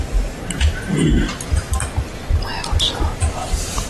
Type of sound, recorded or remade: recorded